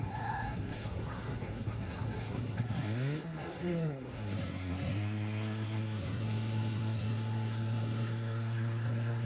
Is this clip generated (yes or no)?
yes